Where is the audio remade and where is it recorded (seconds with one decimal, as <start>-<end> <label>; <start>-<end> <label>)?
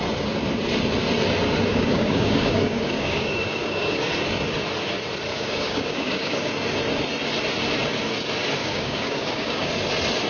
0.0-1.7 recorded; 1.7-4.1 remade; 4.1-5.3 recorded; 5.3-6.5 remade; 6.5-8.6 recorded; 8.6-9.7 remade; 9.7-10.3 recorded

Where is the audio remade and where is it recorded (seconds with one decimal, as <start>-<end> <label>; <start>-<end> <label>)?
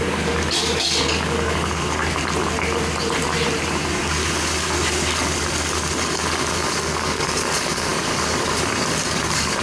0.0-2.0 remade; 2.0-3.9 recorded; 3.9-9.6 remade